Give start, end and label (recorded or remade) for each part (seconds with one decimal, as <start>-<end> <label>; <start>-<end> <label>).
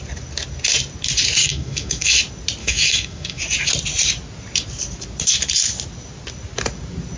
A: 0.0-1.4 recorded; 1.4-2.2 remade; 2.2-2.6 recorded; 2.6-3.4 remade; 3.4-7.2 recorded